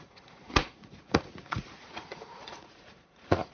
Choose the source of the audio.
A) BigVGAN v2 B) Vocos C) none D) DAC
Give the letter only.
B